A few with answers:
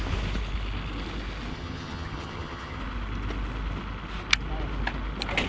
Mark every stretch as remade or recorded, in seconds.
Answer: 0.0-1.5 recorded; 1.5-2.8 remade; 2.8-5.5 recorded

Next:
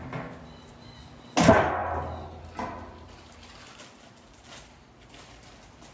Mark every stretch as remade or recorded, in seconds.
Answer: 0.0-5.9 recorded

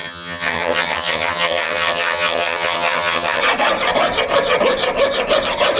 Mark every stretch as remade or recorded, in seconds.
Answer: 0.0-3.4 remade; 3.4-5.8 recorded